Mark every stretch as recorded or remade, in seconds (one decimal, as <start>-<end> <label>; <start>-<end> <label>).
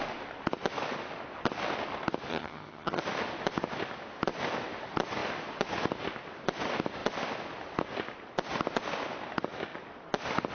0.0-2.3 recorded; 2.3-3.0 remade; 3.0-10.5 recorded